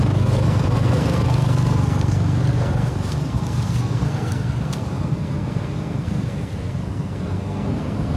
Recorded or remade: remade